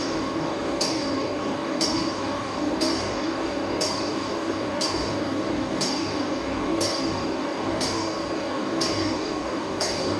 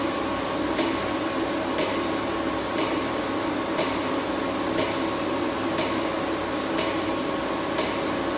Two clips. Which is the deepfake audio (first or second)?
first